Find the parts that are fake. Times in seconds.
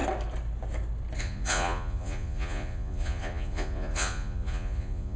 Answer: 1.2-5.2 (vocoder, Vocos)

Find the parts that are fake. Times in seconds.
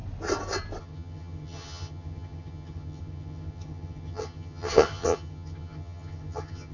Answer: 0.8-6.7 (vocoder, HiFi-GAN)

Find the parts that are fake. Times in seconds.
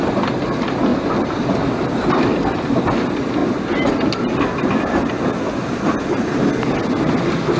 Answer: none